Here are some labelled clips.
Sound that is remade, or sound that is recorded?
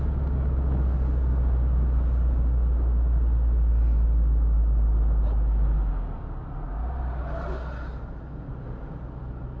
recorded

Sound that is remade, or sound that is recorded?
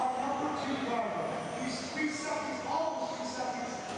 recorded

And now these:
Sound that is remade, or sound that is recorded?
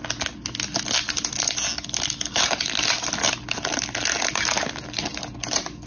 recorded